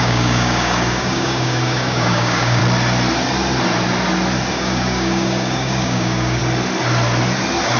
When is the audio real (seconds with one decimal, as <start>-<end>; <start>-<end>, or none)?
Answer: 2.6-4.5; 6.4-7.8